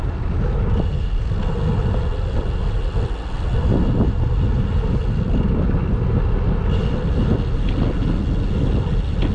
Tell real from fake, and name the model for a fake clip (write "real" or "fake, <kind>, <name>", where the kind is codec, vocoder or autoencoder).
real